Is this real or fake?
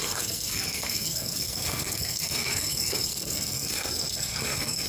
fake